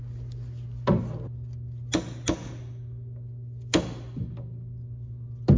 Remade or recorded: recorded